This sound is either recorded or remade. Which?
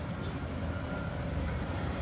remade